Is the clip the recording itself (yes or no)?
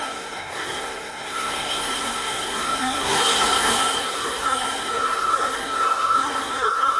no